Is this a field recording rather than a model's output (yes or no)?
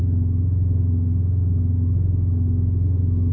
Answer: no